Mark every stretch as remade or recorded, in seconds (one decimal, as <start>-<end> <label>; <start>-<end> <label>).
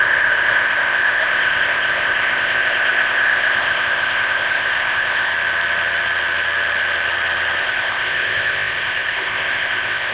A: 0.0-5.3 remade; 5.3-7.6 recorded; 7.6-10.1 remade